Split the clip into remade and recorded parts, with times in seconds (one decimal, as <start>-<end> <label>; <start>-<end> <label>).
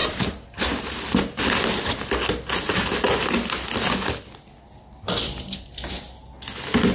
0.0-1.4 remade; 1.4-6.9 recorded